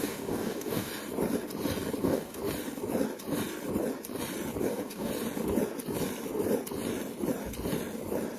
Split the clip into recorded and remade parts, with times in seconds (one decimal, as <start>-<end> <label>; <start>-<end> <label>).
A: 0.0-0.9 remade; 0.9-2.0 recorded; 2.0-2.4 remade; 2.4-4.6 recorded; 4.6-5.1 remade; 5.1-8.4 recorded